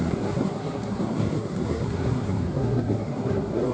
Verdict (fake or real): fake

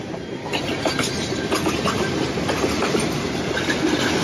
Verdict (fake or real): real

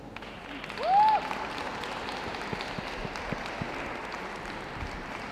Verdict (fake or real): real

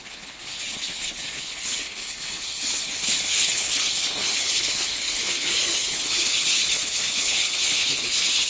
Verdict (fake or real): fake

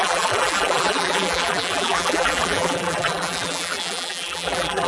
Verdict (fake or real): fake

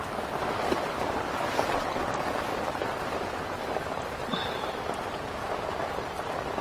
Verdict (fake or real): real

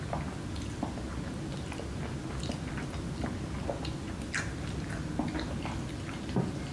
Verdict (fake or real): real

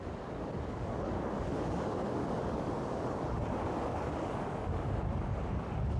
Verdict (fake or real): fake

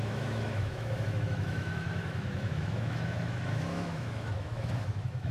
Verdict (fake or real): fake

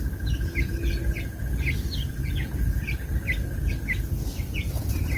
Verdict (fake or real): real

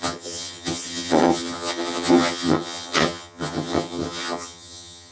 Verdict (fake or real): fake